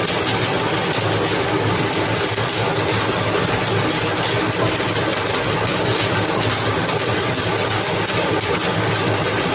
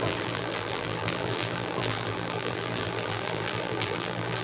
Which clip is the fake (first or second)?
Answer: second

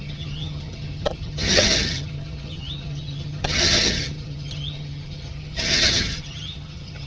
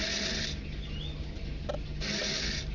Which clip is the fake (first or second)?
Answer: first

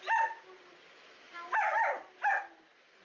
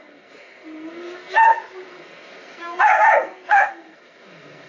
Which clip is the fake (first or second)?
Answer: second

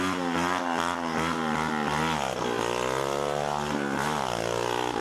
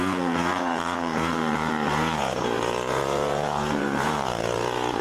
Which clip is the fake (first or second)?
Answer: second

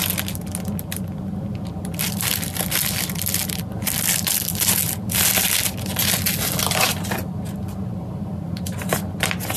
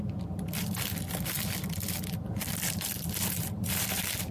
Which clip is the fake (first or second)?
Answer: second